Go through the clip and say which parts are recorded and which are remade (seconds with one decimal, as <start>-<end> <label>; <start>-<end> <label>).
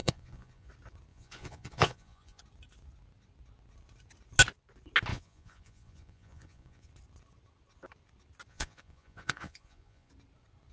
0.0-0.7 remade; 0.7-1.1 recorded; 1.1-2.4 remade; 2.4-5.1 recorded; 5.1-6.9 remade; 6.9-8.5 recorded; 8.5-10.1 remade; 10.1-10.7 recorded